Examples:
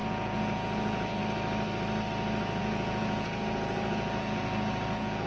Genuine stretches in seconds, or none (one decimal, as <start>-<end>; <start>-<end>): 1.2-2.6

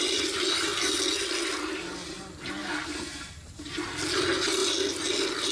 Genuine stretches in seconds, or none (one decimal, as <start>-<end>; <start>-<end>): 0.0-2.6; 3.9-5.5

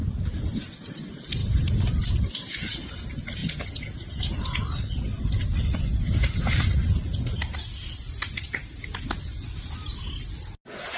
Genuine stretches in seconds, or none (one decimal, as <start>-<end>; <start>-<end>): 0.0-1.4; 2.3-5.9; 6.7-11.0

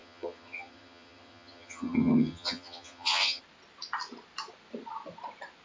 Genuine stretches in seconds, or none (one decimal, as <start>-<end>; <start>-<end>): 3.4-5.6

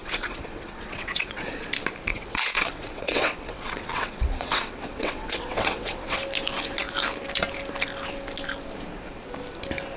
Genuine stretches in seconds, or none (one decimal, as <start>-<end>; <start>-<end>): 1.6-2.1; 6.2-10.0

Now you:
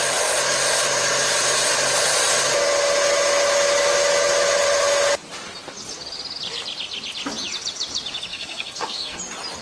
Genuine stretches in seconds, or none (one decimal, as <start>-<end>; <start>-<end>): 0.0-8.3; 9.2-9.6

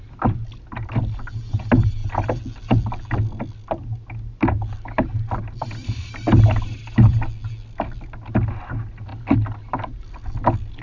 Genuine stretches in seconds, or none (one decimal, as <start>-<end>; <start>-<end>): 0.0-10.8